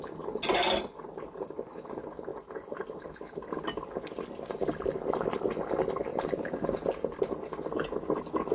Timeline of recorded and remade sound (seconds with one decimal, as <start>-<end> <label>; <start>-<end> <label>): 0.0-6.1 recorded; 6.1-7.2 remade; 7.2-8.5 recorded